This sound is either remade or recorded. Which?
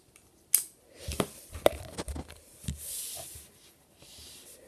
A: recorded